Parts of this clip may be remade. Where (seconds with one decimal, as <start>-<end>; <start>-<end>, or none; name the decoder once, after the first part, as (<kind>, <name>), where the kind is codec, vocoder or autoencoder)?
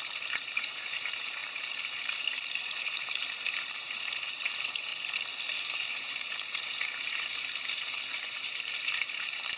0.0-4.9 (vocoder, BigVGAN v2); 5.7-9.6